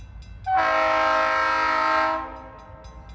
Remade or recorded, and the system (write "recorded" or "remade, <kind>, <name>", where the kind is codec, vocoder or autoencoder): recorded